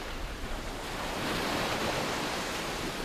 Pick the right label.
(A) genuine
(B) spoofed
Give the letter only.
B